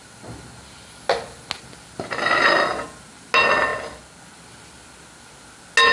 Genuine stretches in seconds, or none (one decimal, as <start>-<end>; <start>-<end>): 0.0-2.7; 3.3-5.9